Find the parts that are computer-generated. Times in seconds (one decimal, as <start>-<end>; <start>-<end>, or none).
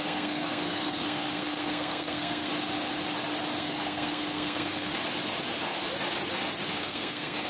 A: 0.0-2.5; 3.6-4.9; 6.7-7.5